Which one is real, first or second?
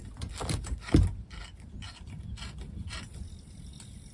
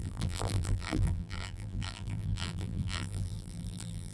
first